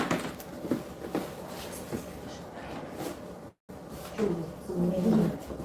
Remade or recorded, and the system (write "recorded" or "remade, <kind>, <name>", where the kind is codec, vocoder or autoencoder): recorded